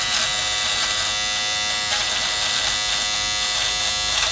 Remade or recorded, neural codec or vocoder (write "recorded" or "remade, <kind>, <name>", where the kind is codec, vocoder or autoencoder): recorded